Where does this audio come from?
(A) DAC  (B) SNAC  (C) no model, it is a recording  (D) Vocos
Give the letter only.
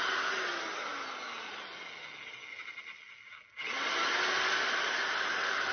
C